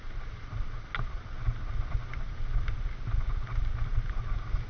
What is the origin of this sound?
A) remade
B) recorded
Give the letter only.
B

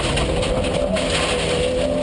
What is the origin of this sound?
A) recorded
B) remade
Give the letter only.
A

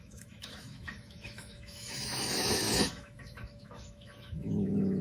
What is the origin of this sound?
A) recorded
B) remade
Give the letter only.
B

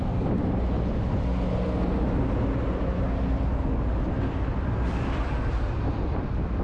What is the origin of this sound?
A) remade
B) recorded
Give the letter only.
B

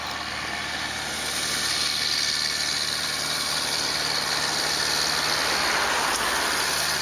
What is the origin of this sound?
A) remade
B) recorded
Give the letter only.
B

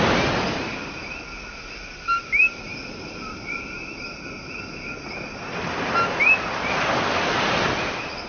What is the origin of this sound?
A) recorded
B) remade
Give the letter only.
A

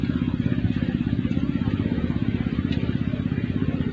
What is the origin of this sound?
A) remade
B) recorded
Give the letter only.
B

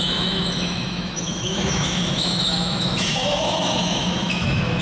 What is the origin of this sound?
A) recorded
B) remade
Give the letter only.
B